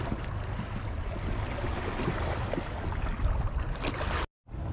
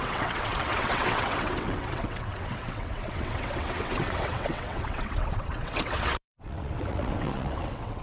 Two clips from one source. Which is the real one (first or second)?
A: first